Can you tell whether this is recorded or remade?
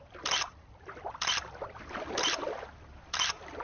remade